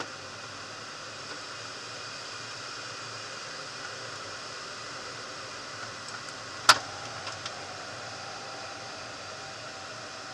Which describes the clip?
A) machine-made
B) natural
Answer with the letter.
B